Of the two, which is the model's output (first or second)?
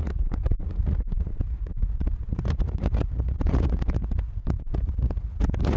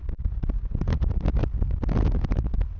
first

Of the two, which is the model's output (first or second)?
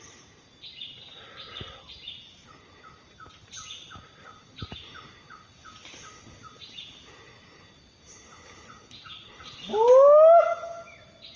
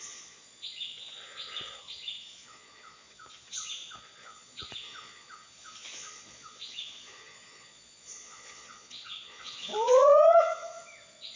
second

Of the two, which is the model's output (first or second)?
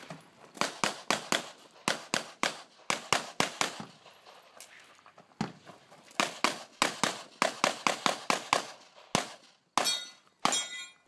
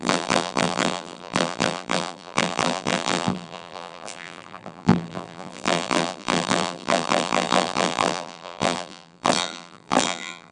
second